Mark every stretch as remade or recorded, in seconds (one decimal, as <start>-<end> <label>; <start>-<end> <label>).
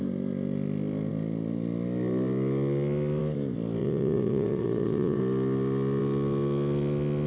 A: 0.0-3.8 recorded; 3.8-5.2 remade; 5.2-7.3 recorded